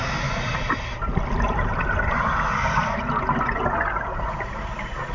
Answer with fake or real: real